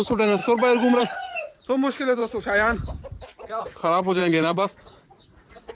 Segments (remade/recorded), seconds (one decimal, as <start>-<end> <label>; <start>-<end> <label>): 0.0-0.4 remade; 0.4-1.0 recorded; 1.0-2.2 remade; 2.2-3.6 recorded; 3.6-5.7 remade